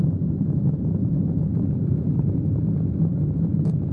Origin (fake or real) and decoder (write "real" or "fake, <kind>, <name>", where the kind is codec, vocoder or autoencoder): fake, vocoder, BigVGAN v2